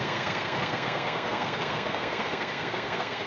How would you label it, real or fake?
fake